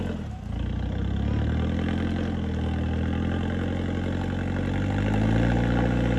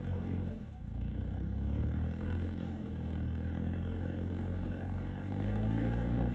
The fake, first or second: second